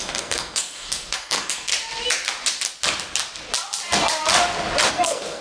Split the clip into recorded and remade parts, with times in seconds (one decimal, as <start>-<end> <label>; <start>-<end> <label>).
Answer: 0.0-1.7 remade; 1.7-4.9 recorded; 4.9-5.4 remade